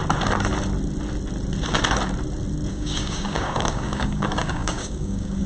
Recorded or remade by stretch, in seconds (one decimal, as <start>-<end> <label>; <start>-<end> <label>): 0.0-2.7 recorded; 2.7-5.5 remade